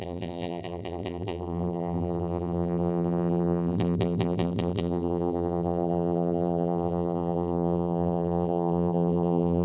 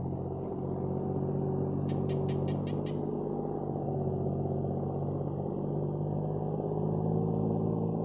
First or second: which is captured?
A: second